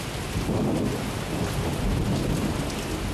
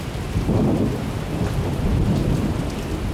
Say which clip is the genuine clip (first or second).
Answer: first